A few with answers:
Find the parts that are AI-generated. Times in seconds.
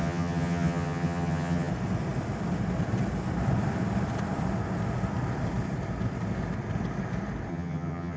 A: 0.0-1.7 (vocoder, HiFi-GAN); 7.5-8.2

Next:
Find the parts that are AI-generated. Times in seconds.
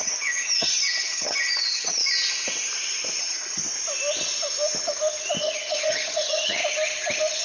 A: 0.0-2.0 (vocoder, HiFi-GAN); 3.2-3.6; 5.4-6.6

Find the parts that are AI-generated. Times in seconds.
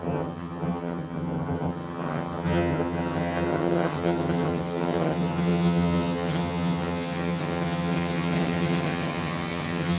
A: 0.0-10.0 (vocoder, HiFi-GAN)